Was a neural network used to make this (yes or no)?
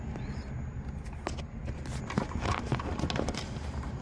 no